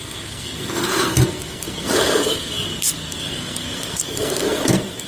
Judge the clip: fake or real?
fake